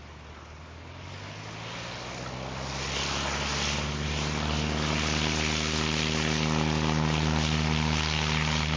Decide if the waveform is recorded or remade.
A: recorded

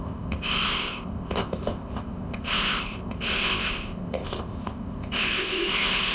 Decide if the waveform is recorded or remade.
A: remade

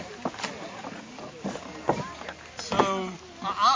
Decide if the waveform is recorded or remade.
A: recorded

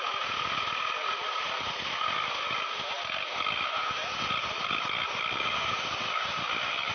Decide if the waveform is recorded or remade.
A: recorded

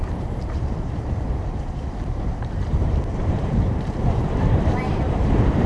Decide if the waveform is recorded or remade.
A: remade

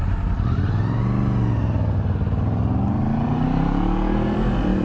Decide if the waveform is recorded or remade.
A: recorded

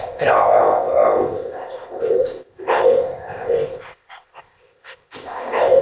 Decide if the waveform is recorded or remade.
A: remade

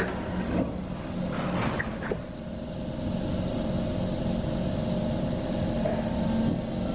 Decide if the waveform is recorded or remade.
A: recorded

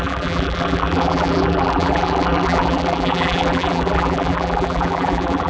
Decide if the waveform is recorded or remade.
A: remade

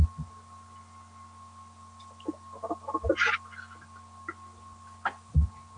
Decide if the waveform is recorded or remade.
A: recorded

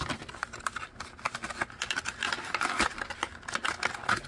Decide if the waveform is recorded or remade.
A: recorded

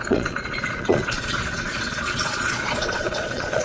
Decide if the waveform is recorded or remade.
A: remade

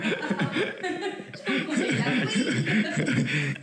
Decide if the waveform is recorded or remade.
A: recorded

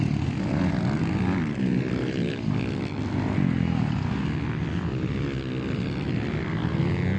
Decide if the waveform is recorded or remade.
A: recorded